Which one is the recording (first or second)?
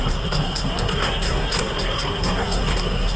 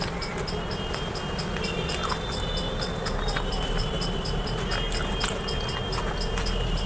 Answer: second